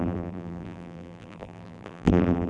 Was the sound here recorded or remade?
remade